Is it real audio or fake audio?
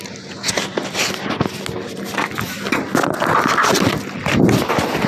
real